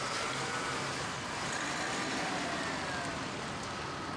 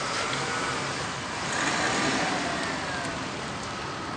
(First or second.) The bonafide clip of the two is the first